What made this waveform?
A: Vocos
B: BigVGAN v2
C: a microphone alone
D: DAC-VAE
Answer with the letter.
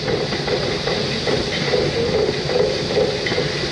C